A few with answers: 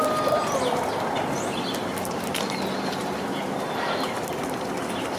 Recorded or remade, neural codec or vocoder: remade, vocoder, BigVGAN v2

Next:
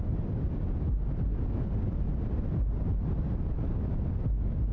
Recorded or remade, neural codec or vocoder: recorded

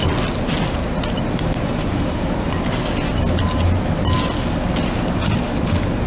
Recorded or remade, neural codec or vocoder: recorded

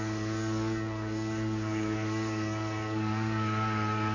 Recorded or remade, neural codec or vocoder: remade, codec, DAC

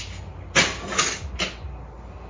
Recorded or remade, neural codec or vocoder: recorded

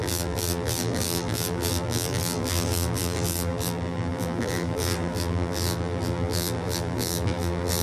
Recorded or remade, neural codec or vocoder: remade, vocoder, BigVGAN v2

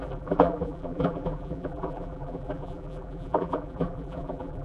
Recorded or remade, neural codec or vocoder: remade, vocoder, BigVGAN v2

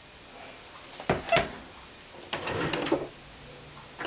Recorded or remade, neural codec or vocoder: recorded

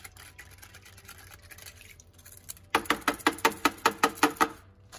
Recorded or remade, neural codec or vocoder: recorded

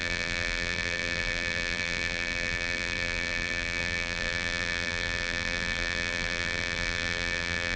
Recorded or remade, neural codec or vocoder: remade, vocoder, BigVGAN v2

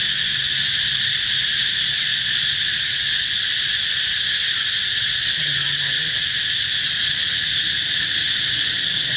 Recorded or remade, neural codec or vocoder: recorded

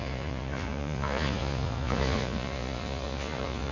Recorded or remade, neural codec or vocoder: remade, vocoder, Vocos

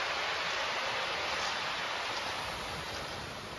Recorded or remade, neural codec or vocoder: recorded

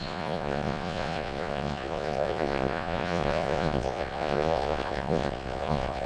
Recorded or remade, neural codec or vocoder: remade, vocoder, Vocos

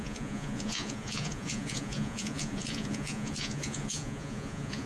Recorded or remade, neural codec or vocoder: remade, vocoder, Vocos